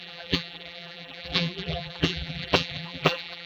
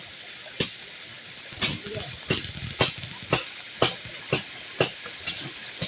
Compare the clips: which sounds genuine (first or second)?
second